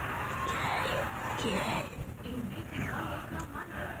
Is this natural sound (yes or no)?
yes